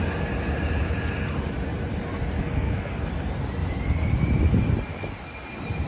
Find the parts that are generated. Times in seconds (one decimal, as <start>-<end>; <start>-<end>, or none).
2.4-3.1

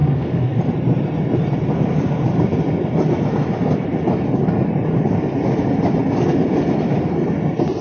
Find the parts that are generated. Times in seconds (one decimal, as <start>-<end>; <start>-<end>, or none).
0.0-0.6

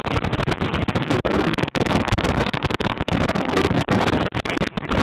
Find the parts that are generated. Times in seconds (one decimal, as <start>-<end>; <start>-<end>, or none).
1.0-4.0

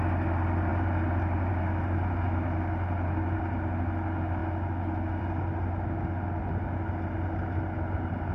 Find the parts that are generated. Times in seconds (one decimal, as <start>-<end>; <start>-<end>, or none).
none

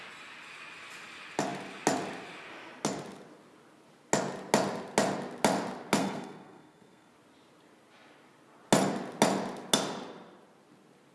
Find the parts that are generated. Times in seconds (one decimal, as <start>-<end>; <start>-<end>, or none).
6.0-7.1

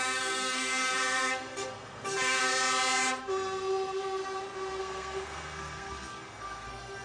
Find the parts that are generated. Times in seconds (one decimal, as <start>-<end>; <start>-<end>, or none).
0.0-2.5; 3.2-4.2; 4.8-7.0

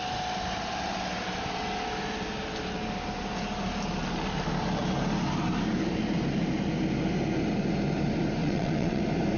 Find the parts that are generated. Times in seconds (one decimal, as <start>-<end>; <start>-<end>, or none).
8.4-9.0

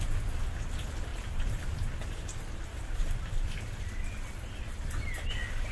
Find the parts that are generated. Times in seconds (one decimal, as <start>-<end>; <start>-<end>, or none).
1.1-3.0